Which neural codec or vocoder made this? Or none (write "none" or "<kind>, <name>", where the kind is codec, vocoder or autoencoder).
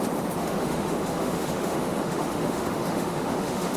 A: autoencoder, DAC-VAE